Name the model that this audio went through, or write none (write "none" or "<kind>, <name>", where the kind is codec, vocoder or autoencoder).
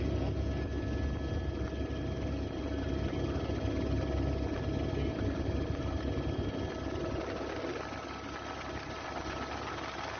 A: none